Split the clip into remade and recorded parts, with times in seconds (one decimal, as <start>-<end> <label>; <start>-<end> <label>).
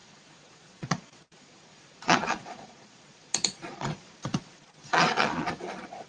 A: 0.0-6.1 remade